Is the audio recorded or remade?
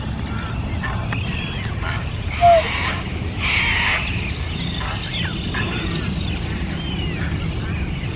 recorded